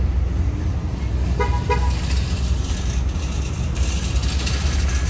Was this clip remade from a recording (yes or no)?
no